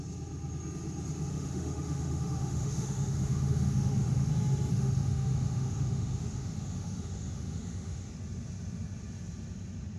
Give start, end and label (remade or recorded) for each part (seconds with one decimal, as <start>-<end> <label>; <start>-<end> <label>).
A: 0.0-1.3 recorded; 1.3-4.3 remade; 4.3-4.7 recorded; 4.7-8.1 remade; 8.1-10.0 recorded